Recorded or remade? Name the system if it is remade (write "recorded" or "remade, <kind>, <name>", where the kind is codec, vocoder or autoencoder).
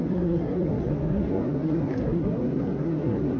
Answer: remade, codec, SNAC